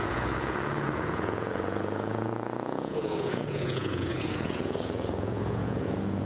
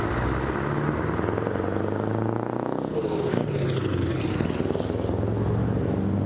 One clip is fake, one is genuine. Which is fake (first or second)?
first